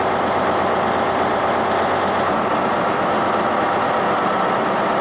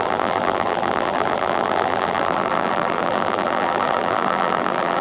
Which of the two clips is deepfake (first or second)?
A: second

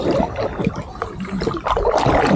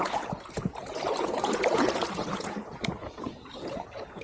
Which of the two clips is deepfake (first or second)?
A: second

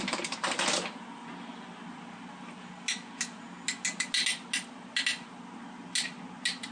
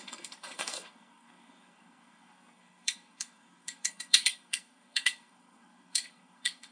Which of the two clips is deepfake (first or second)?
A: second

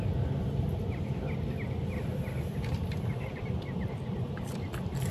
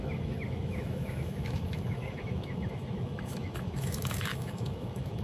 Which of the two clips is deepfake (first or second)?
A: second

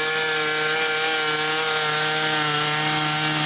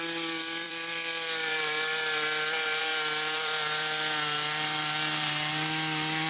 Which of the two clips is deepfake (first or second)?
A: second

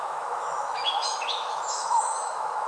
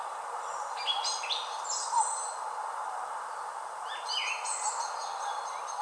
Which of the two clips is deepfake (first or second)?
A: first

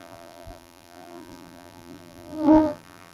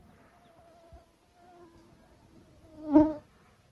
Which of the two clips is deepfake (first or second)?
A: first